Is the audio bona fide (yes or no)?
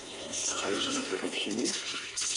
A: no